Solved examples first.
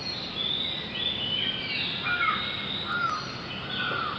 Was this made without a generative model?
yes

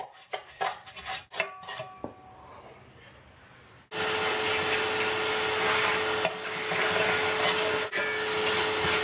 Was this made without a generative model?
yes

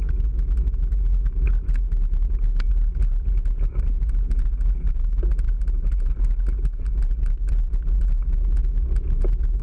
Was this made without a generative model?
yes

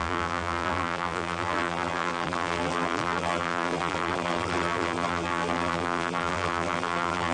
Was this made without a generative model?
no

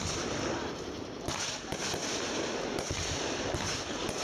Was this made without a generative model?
yes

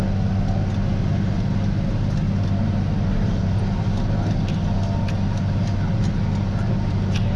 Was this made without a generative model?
yes